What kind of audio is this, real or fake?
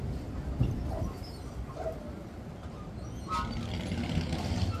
real